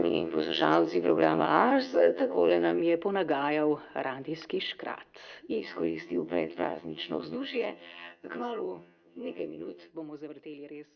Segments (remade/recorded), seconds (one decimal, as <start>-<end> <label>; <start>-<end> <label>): 0.0-2.8 remade; 2.8-5.5 recorded; 5.5-9.9 remade; 9.9-11.0 recorded